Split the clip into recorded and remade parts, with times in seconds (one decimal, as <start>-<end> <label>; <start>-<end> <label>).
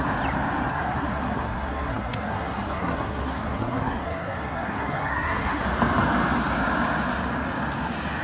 0.0-0.7 recorded; 0.7-5.6 remade; 5.6-8.2 recorded